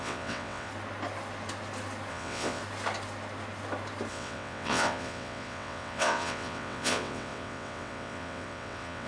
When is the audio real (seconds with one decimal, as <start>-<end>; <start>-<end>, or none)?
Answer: 0.7-2.1; 2.6-4.1